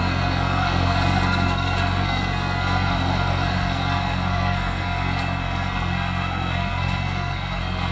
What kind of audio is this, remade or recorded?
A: remade